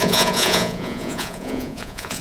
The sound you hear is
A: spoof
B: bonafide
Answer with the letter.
A